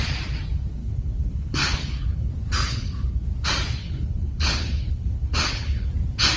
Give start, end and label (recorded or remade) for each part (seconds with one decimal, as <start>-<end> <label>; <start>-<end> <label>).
0.0-0.8 recorded; 0.8-2.3 remade; 2.3-2.7 recorded; 2.7-3.3 remade; 3.3-3.8 recorded; 3.8-5.9 remade; 5.9-6.4 recorded